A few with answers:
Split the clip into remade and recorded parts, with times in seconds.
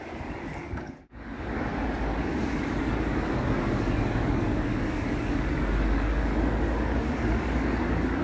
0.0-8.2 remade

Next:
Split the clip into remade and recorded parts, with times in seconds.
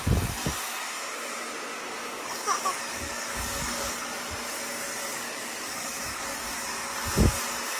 0.0-2.0 recorded; 2.0-3.9 remade; 3.9-5.1 recorded; 5.1-6.6 remade; 6.6-7.8 recorded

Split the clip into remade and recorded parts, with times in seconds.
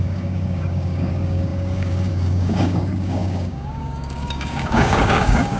0.0-5.6 remade